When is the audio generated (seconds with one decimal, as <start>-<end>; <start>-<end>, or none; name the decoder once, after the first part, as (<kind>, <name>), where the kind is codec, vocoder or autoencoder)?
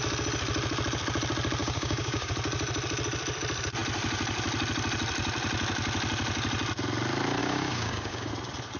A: 1.6-2.3 (codec, DAC); 7.4-8.3